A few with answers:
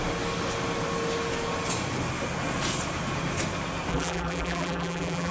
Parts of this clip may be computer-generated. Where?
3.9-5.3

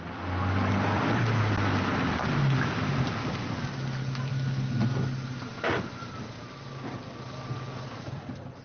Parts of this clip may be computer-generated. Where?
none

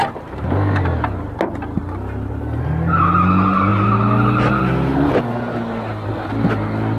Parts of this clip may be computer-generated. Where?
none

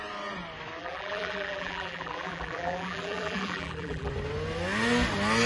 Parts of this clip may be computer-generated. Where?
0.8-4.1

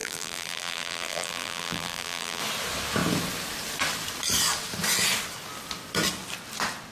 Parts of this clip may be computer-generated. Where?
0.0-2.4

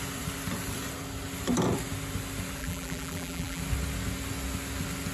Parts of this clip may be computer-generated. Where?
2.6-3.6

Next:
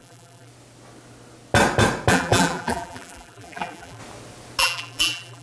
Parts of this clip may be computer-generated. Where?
0.0-0.5; 2.1-4.0; 4.6-5.4

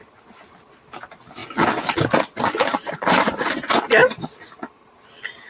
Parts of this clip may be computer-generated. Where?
2.7-3.3; 4.0-5.1